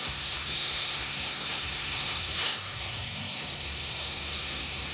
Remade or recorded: remade